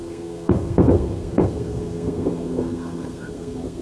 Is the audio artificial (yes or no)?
yes